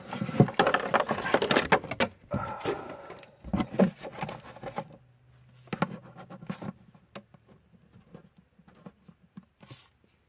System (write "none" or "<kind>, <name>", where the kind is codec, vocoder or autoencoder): none